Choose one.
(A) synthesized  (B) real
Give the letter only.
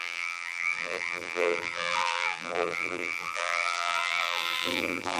A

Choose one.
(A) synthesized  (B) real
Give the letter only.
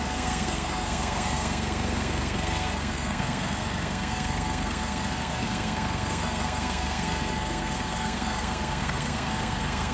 A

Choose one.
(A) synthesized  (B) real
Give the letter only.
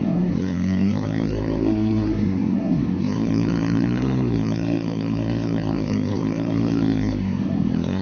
A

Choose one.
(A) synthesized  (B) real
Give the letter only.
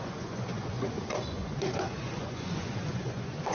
A